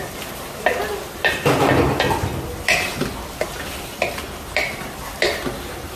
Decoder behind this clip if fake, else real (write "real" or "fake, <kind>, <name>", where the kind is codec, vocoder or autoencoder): real